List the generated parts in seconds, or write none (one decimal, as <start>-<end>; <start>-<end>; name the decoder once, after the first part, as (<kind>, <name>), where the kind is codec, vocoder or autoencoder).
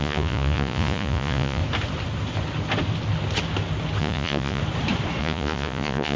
0.0-1.6 (vocoder, Vocos); 4.0-4.6; 5.2-6.2